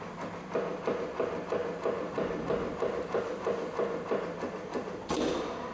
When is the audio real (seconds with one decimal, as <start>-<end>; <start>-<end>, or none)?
0.0-5.7